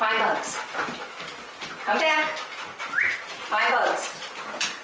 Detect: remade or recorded recorded